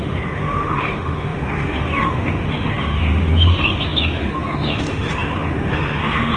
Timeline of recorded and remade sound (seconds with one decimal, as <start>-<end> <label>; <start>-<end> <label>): 0.0-6.4 remade